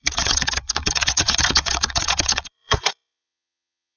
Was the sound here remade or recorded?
remade